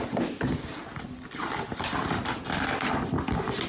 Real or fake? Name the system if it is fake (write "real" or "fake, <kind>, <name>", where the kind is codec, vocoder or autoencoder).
real